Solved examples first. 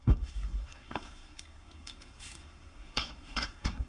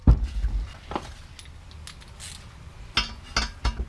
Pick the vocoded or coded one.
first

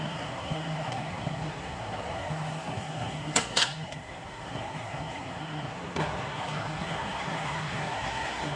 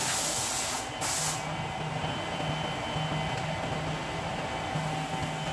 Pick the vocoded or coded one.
first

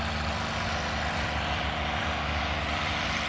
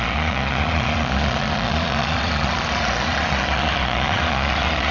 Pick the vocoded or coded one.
second